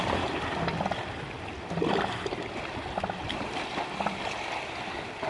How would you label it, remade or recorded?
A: recorded